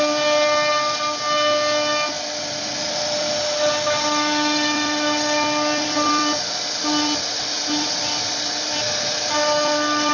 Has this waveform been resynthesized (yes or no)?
no